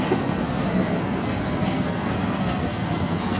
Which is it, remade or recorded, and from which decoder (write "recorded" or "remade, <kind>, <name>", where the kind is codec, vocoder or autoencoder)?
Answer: remade, codec, SNAC